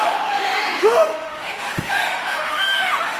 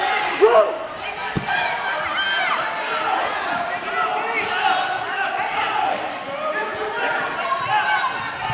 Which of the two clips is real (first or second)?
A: second